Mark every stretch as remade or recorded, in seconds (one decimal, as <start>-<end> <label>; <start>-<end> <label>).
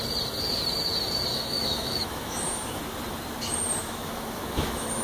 0.0-1.3 recorded; 1.3-2.8 remade; 2.8-3.8 recorded; 3.8-5.0 remade